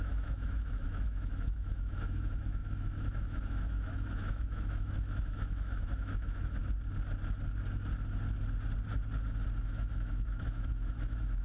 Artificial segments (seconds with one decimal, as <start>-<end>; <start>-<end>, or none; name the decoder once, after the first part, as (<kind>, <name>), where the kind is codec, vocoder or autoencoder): 0.0-6.6 (autoencoder, DAC-VAE); 9.6-11.4